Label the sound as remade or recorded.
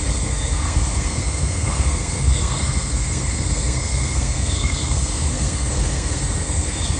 remade